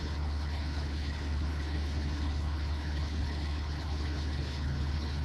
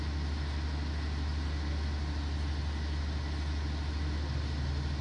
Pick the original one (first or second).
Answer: second